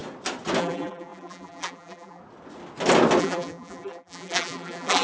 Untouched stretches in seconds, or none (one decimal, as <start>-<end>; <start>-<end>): 0.0-0.6; 2.2-3.2